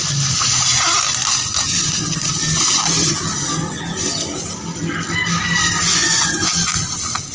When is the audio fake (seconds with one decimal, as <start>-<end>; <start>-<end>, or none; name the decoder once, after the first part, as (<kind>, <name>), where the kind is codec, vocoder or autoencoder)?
5.9-6.5 (vocoder, Vocos)